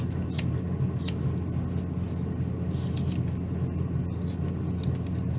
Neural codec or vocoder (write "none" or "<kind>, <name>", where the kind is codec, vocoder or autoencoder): none